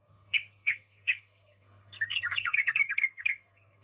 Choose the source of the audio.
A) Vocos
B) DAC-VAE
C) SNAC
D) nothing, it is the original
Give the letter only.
C